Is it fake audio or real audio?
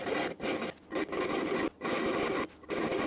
real